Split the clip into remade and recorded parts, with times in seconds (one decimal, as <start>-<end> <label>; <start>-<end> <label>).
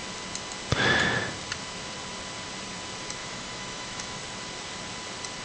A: 0.0-3.2 recorded; 3.2-4.2 remade; 4.2-5.4 recorded